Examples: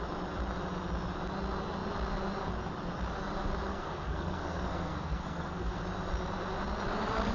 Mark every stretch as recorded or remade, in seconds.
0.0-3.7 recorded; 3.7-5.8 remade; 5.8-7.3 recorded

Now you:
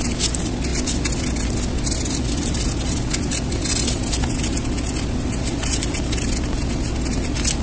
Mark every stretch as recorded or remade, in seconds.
0.0-7.6 recorded

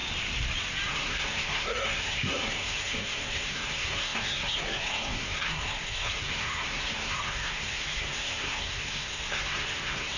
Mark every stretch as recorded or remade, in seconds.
0.0-0.9 recorded; 0.9-10.2 remade

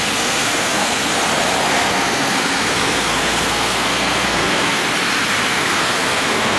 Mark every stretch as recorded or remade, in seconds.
0.0-1.1 remade; 1.1-1.7 recorded; 1.7-4.8 remade; 4.8-5.5 recorded; 5.5-6.6 remade

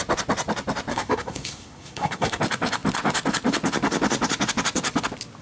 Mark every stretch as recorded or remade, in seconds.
0.0-0.9 recorded; 0.9-2.4 remade; 2.4-5.4 recorded

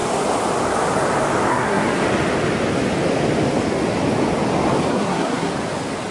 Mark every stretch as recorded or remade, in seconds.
0.0-1.5 recorded; 1.5-2.0 remade; 2.0-4.9 recorded; 4.9-5.5 remade; 5.5-6.1 recorded